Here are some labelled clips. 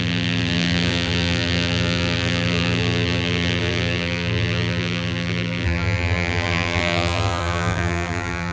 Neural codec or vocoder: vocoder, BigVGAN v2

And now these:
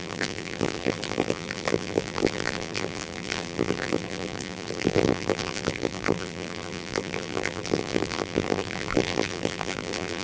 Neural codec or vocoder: vocoder, BigVGAN v2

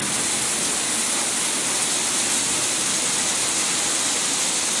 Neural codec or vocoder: none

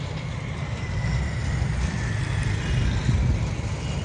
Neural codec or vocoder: none